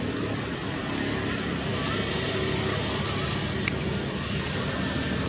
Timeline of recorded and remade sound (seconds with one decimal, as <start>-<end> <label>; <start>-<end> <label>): 0.0-1.7 remade; 1.7-4.8 recorded; 4.8-5.3 remade